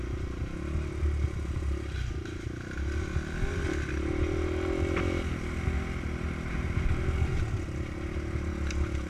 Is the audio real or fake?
real